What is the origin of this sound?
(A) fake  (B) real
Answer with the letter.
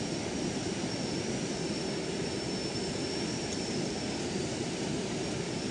B